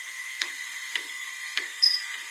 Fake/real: fake